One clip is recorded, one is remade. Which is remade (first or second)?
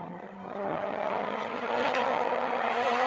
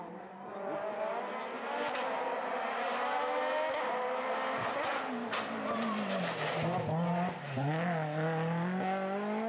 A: first